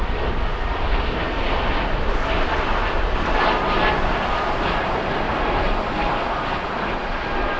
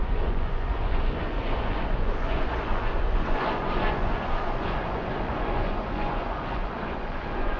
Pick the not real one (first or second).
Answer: second